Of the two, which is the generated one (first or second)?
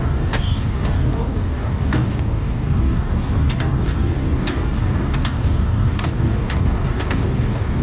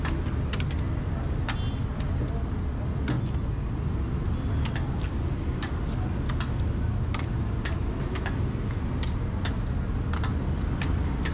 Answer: first